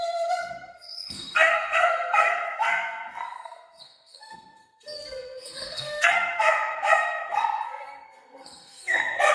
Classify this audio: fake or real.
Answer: fake